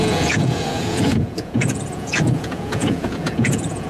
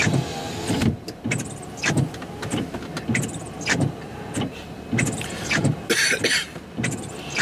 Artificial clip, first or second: first